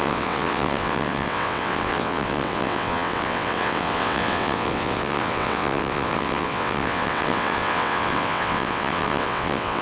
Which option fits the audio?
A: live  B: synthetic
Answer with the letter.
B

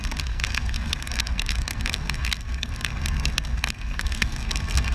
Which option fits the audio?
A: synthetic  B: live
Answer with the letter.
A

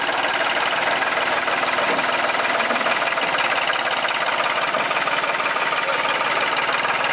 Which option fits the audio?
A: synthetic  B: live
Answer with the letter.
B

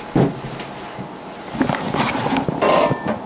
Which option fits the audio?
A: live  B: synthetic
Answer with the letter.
A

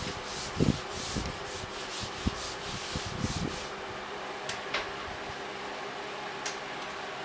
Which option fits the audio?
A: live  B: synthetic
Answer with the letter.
A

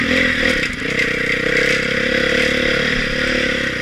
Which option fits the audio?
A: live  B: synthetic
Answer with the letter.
A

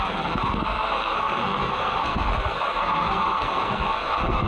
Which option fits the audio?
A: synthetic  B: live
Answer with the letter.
A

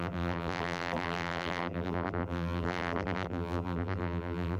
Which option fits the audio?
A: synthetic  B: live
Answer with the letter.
A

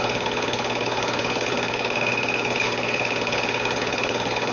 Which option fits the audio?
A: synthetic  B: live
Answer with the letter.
A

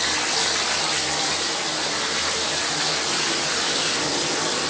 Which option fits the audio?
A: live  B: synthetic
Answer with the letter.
A